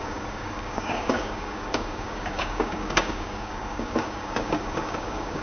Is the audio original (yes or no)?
no